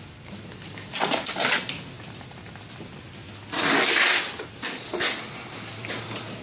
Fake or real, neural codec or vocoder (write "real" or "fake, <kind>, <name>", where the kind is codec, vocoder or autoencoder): real